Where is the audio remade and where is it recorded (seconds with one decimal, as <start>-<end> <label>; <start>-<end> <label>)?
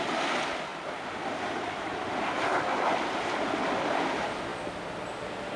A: 0.0-0.7 recorded; 0.7-4.1 remade; 4.1-4.5 recorded; 4.5-5.6 remade